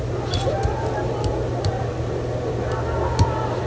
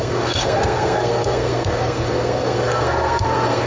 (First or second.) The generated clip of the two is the second